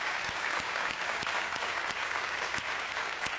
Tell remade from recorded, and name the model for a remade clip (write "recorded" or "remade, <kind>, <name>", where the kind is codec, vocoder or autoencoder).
remade, codec, DAC